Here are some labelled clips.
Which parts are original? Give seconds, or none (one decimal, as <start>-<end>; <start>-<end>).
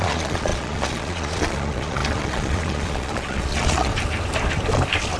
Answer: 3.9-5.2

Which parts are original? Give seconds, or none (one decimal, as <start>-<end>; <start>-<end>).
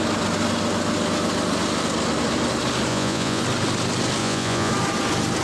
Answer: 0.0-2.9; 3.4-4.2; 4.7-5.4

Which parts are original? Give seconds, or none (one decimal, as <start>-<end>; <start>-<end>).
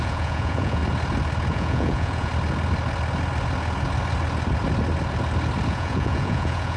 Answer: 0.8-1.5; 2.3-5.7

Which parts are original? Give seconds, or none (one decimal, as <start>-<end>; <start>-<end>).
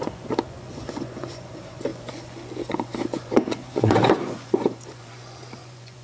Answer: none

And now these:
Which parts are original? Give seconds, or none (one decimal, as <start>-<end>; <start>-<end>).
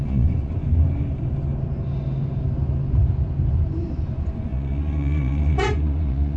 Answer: 0.6-4.0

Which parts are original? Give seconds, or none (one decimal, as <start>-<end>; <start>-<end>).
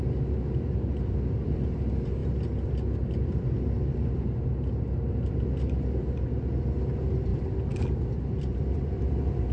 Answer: 0.0-9.5